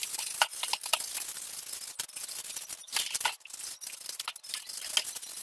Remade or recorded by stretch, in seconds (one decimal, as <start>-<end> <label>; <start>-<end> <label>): 0.0-5.4 recorded